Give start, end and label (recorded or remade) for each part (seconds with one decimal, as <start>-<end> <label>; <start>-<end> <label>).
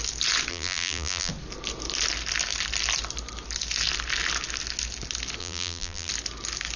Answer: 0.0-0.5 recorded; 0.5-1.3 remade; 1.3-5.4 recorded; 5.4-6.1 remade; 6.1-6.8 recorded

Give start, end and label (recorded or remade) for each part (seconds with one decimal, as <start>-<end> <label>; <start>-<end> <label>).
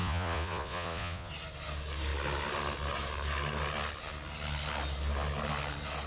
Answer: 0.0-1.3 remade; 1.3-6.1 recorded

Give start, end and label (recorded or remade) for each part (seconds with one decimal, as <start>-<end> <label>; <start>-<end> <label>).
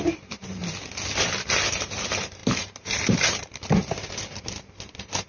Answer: 0.0-0.6 remade; 0.6-1.7 recorded; 1.7-5.3 remade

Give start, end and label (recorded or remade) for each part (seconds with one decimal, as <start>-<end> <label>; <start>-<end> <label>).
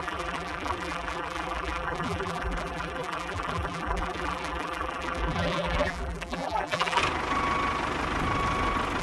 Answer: 0.0-7.0 remade; 7.0-9.0 recorded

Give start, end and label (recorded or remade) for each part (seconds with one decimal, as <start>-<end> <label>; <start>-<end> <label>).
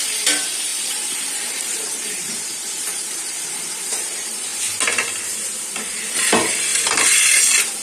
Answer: 0.0-4.5 remade; 4.5-5.7 recorded; 5.7-7.8 remade